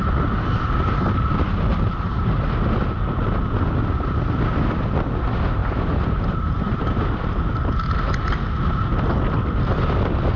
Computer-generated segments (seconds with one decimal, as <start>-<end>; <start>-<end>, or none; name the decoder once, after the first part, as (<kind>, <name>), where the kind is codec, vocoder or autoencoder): 1.7-2.4 (vocoder, BigVGAN v2); 5.6-7.4